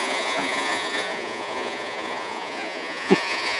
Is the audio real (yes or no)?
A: no